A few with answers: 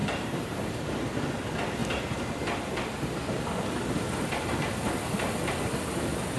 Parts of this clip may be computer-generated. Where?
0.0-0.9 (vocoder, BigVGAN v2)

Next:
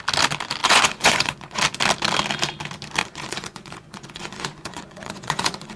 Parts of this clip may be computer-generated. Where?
0.6-1.6 (vocoder, Vocos); 3.0-5.8